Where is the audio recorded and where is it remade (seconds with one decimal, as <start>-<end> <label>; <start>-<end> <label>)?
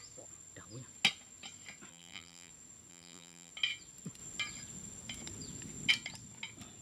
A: 0.0-1.9 recorded; 1.9-2.5 remade; 2.5-2.9 recorded; 2.9-3.5 remade; 3.5-6.8 recorded